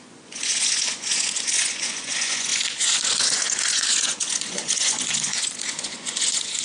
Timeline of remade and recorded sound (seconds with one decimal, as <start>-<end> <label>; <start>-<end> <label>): 0.0-6.6 remade